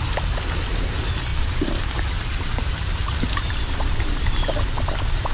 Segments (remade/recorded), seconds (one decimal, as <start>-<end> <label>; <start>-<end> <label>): 0.0-1.3 recorded; 1.3-4.5 remade; 4.5-5.3 recorded